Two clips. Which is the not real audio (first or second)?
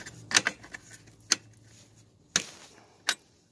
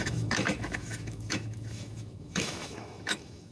second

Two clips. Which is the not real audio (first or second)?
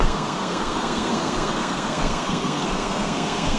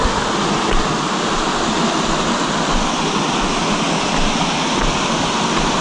first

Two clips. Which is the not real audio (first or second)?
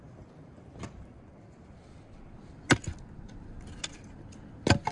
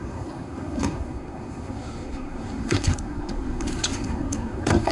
second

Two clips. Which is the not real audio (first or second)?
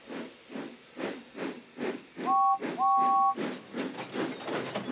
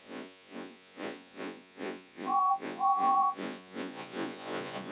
second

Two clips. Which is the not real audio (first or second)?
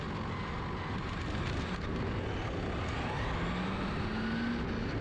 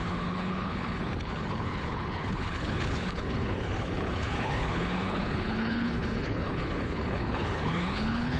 second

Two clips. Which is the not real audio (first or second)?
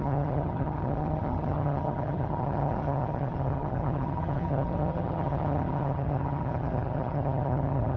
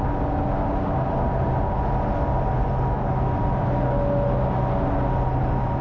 first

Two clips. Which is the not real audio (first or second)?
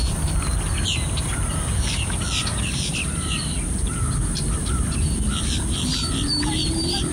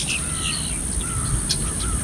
first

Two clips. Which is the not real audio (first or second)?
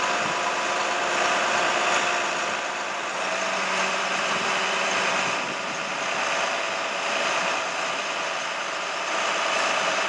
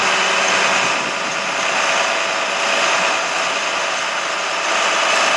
first